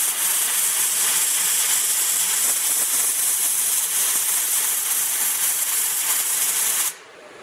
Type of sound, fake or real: real